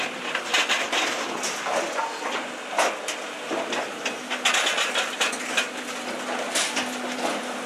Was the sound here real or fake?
real